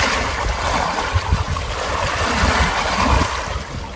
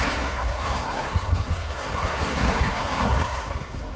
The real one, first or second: first